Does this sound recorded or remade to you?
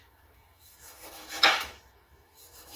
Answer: remade